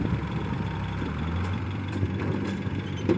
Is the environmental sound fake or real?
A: fake